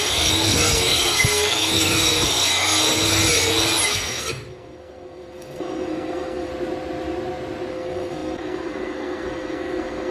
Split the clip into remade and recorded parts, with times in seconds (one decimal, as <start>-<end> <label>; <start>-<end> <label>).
0.0-3.2 remade; 3.2-3.9 recorded; 3.9-6.5 remade; 6.5-7.7 recorded; 7.7-10.1 remade